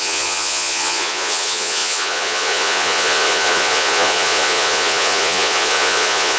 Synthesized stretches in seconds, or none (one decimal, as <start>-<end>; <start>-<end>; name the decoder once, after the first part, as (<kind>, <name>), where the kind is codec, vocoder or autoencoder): 0.0-6.4 (vocoder, Vocos)